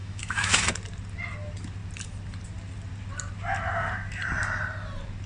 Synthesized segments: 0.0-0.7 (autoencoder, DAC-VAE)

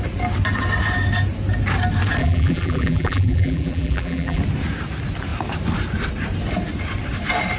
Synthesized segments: 2.2-4.4 (vocoder, BigVGAN v2)

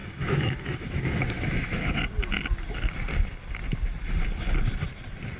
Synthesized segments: 0.0-2.0 (autoencoder, DAC-VAE)

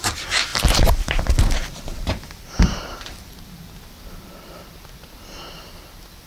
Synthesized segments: 0.5-1.2 (vocoder, BigVGAN v2); 2.1-4.7

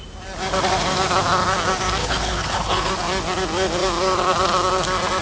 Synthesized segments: 2.0-2.9 (codec, HILCodec)

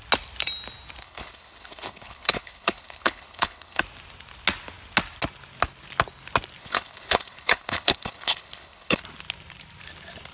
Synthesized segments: 1.0-3.8 (codec, HILCodec); 6.6-9.0

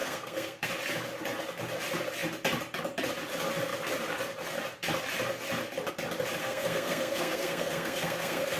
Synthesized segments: 0.0-0.7 (codec, SNAC); 6.4-8.6